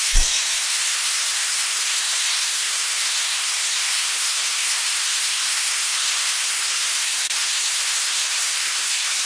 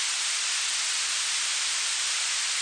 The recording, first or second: second